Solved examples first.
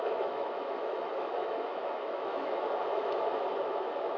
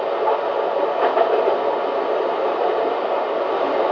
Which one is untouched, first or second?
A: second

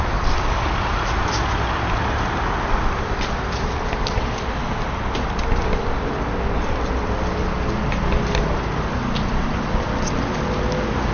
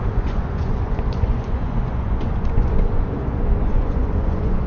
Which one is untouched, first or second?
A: first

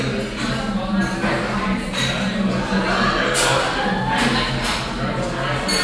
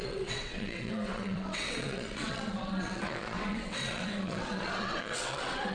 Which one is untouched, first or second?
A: first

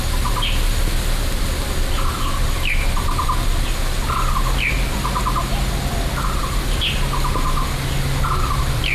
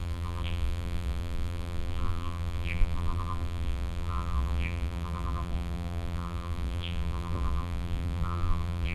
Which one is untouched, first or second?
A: first